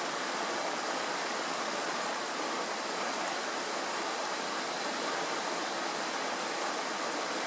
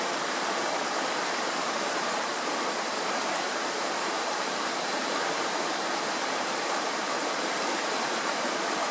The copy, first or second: second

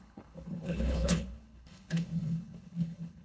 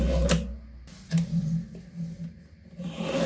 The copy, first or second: first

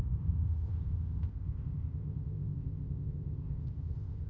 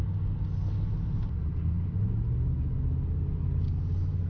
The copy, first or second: first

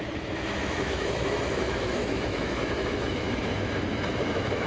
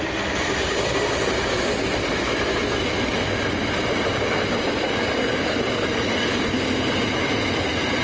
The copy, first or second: first